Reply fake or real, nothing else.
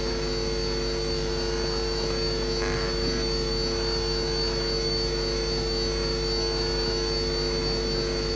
fake